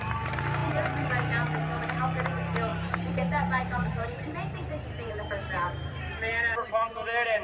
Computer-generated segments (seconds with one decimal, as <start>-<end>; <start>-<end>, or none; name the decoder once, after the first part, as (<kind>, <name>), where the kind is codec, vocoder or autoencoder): 0.6-1.1 (vocoder, BigVGAN v2); 2.7-6.3

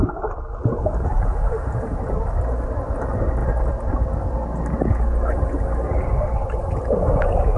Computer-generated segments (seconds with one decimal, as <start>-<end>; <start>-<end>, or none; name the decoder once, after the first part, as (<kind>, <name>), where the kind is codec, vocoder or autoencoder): none

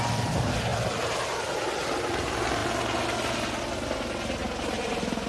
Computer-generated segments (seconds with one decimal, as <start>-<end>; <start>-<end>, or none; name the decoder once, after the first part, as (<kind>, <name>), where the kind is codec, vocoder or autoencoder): 4.4-5.3 (vocoder, BigVGAN v2)